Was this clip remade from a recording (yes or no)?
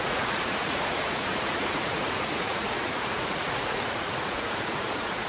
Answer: yes